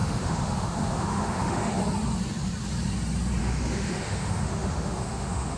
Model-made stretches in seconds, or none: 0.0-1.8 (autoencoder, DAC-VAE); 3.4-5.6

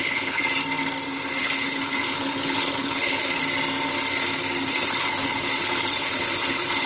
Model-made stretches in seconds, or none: 0.0-0.4 (codec, HILCodec); 1.4-3.4; 4.7-6.9

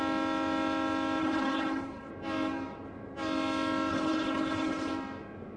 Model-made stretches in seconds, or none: 1.2-2.1 (codec, HILCodec); 3.9-4.9

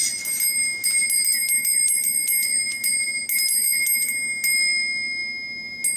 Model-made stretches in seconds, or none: none

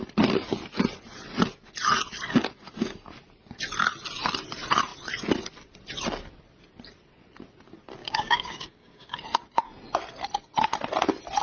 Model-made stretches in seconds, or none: 8.0-9.2 (codec, DAC)

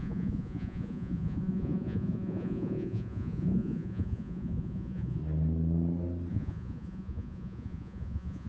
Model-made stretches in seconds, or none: 0.0-5.2 (vocoder, Vocos); 6.3-8.5

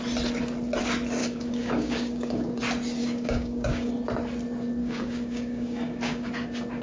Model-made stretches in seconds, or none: 1.2-2.6 (codec, DAC); 3.0-3.9; 4.8-6.3

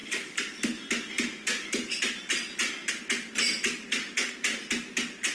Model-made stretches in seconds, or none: 0.0-2.9 (vocoder, BigVGAN v2)